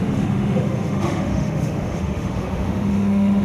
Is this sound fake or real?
fake